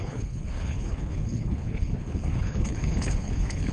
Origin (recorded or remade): remade